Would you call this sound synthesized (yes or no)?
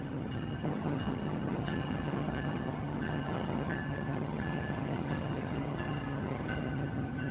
yes